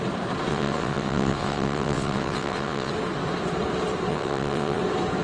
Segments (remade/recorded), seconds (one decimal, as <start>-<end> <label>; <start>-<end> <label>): 0.0-0.5 recorded; 0.5-2.9 remade; 2.9-4.1 recorded; 4.1-4.8 remade; 4.8-5.2 recorded